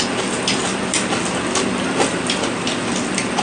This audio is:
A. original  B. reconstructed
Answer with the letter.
A